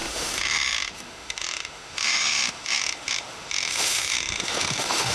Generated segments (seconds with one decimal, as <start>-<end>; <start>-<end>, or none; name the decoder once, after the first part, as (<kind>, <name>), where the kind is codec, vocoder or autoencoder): 0.0-5.1 (autoencoder, DAC-VAE)